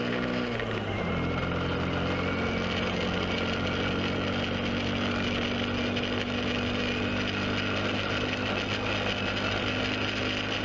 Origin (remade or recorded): recorded